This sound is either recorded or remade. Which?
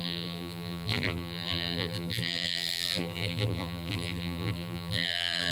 remade